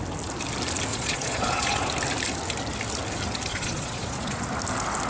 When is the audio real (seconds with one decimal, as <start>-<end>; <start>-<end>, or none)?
0.0-0.9; 1.9-3.5; 4.4-5.1